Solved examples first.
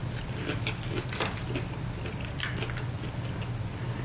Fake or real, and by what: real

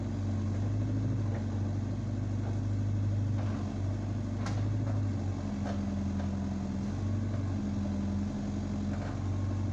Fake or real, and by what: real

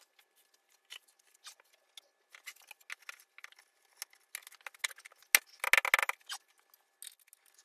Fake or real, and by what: real